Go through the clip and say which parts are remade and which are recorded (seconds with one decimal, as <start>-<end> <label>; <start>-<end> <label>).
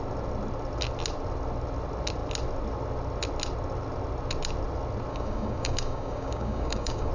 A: 0.0-5.1 recorded; 5.1-7.1 remade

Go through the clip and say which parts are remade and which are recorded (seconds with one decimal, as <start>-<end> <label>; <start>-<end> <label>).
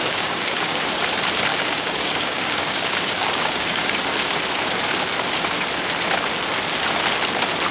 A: 0.0-0.8 remade; 0.8-1.5 recorded; 1.5-3.9 remade; 3.9-7.7 recorded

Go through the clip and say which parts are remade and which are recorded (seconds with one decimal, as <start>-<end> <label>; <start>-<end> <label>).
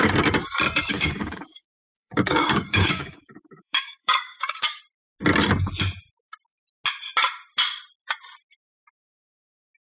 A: 0.0-0.9 recorded; 0.9-4.8 remade; 4.8-9.9 recorded